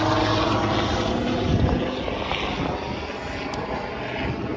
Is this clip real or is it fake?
real